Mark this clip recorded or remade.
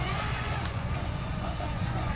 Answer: remade